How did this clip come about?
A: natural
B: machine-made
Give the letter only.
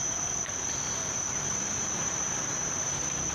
B